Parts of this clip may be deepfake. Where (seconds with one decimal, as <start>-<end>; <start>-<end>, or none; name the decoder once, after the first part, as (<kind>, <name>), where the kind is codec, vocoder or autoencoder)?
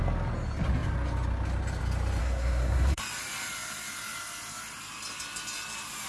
2.2-3.0 (codec, SNAC)